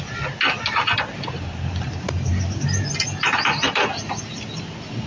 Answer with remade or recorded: recorded